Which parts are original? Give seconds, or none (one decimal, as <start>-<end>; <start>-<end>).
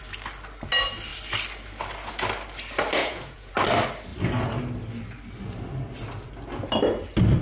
0.0-3.0; 3.5-7.4